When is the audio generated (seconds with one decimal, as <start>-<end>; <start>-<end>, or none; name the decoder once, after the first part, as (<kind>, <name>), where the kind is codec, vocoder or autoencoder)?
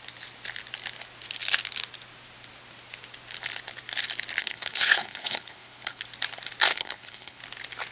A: 4.4-6.0 (codec, HILCodec); 6.7-7.4